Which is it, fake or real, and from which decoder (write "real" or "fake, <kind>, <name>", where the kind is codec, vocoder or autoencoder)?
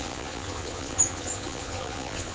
fake, vocoder, Vocos